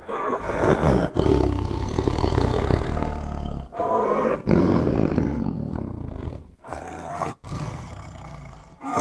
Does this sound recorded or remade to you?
remade